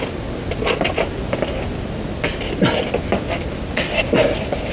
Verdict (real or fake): real